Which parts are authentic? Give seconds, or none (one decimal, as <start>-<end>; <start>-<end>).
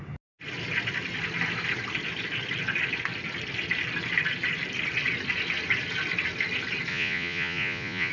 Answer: 0.0-6.9